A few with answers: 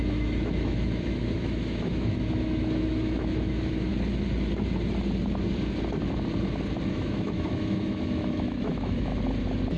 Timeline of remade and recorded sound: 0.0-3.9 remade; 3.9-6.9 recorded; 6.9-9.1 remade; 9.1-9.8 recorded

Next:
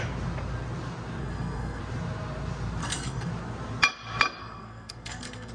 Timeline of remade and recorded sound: 0.0-1.2 recorded; 1.2-1.8 remade; 1.8-2.8 recorded; 2.8-3.3 remade; 3.3-4.4 recorded; 4.4-5.5 remade

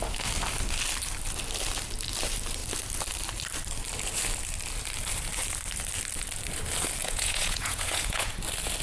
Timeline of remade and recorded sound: 0.0-7.0 recorded; 7.0-8.4 remade; 8.4-8.8 recorded

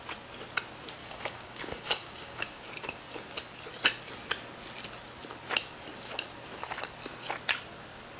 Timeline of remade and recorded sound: 0.0-1.0 recorded; 1.0-2.7 remade; 2.7-8.2 recorded

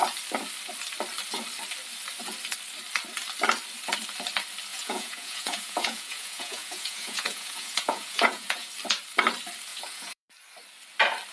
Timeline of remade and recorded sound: 0.0-4.7 recorded; 4.7-8.7 remade; 8.7-9.7 recorded; 9.7-10.3 remade; 10.3-11.3 recorded

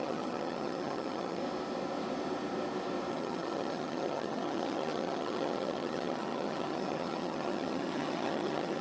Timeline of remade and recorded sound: 0.0-1.4 remade; 1.4-3.1 recorded; 3.1-8.8 remade